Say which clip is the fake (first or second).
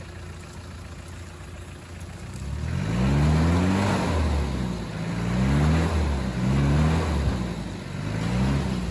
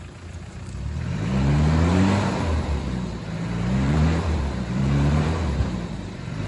second